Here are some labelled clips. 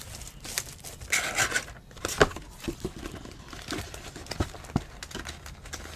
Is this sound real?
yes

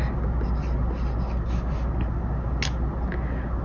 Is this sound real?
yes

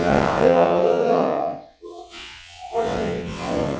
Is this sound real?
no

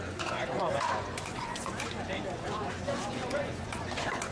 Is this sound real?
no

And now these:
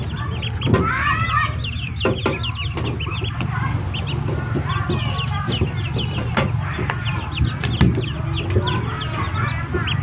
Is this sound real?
yes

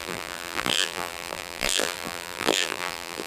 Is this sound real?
no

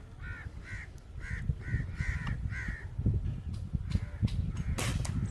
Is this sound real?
yes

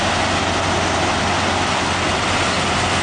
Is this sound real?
yes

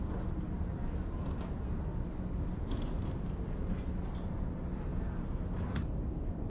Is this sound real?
yes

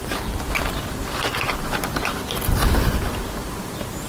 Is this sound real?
yes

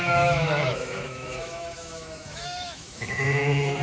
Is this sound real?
no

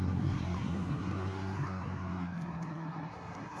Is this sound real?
no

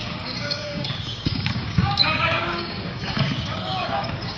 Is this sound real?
no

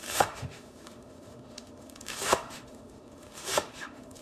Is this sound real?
no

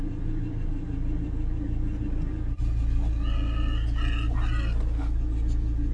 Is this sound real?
yes